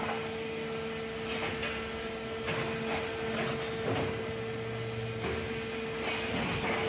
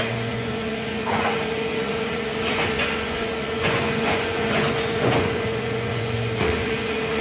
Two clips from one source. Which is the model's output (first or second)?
second